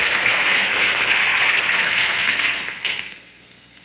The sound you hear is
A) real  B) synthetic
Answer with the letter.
B